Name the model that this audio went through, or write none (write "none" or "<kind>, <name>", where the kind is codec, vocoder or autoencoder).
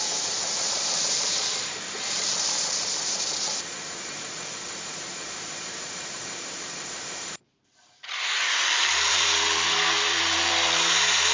vocoder, BigVGAN v2